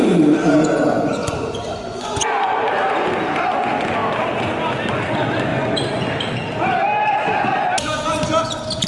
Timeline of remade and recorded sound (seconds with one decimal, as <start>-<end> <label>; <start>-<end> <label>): 0.0-0.6 recorded; 0.6-2.7 remade; 2.7-5.5 recorded; 5.5-6.1 remade; 6.1-8.9 recorded